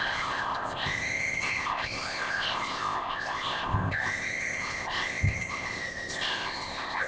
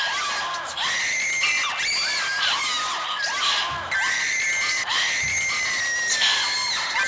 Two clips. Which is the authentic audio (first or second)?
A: second